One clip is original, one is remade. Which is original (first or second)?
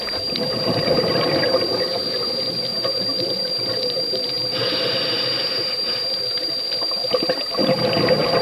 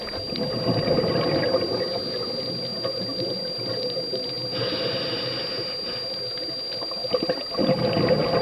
second